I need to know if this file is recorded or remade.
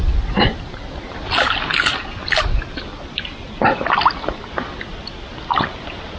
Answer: recorded